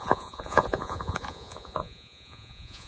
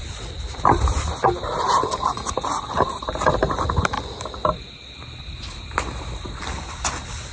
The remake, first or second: first